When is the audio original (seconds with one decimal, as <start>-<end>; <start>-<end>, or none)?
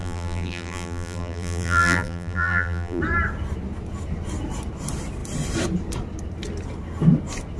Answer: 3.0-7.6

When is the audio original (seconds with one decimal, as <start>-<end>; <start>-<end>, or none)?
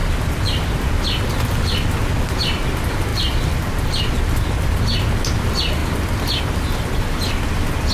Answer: 1.0-3.1; 5.1-7.9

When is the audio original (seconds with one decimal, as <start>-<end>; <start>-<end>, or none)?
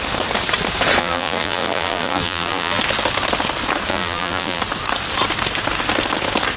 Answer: 0.0-1.0; 2.8-3.9; 4.6-6.6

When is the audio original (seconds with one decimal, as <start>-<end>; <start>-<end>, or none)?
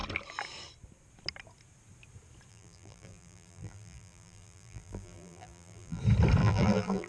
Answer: 0.0-2.5; 6.0-6.4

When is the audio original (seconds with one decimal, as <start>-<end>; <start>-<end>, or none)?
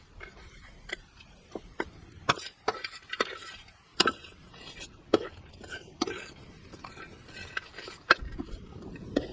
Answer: 3.9-5.5